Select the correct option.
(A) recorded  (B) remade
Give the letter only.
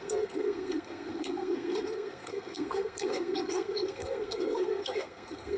B